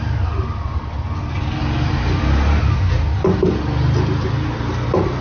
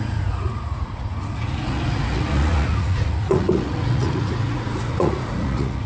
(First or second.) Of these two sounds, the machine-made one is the second